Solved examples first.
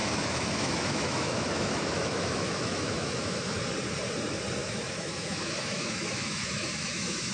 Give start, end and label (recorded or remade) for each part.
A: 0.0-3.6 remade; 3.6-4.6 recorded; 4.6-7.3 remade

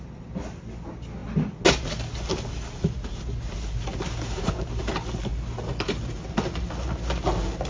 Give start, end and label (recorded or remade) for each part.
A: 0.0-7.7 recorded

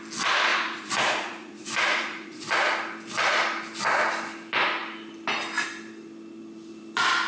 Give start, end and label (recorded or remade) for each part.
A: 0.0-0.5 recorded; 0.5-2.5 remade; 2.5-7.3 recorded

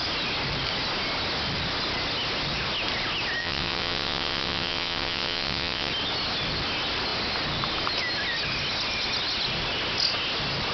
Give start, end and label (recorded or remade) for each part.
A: 0.0-3.4 recorded; 3.4-5.9 remade; 5.9-10.7 recorded

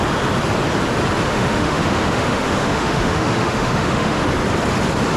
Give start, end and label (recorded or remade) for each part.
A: 0.0-1.3 recorded; 1.3-4.3 remade; 4.3-5.2 recorded

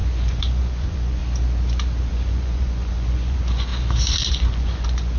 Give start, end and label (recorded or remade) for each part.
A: 0.0-1.2 remade; 1.2-2.1 recorded; 2.1-3.7 remade; 3.7-4.3 recorded; 4.3-5.2 remade

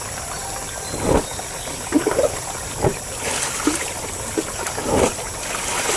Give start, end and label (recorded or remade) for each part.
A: 0.0-6.0 recorded